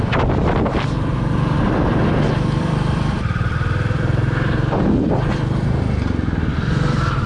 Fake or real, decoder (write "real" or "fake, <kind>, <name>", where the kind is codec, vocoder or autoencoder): fake, vocoder, BigVGAN v2